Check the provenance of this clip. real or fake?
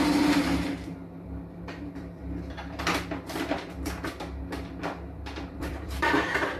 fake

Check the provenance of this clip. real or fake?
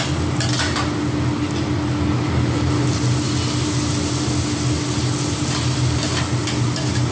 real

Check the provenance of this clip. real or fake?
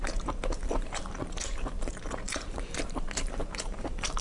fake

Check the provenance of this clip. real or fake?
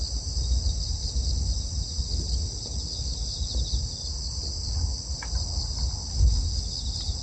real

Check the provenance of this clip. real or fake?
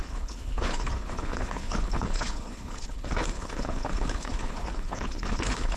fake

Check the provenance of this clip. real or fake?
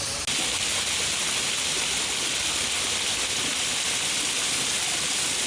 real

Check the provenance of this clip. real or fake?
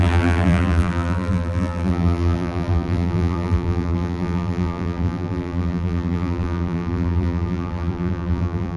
fake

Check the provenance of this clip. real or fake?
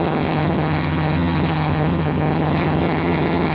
fake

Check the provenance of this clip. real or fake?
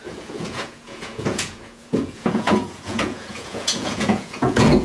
fake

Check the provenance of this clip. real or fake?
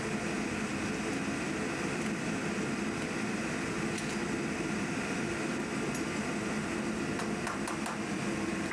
real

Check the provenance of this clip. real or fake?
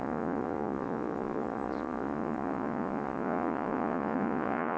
fake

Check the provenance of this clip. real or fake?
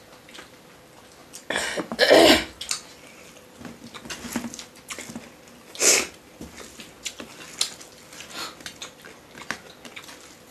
real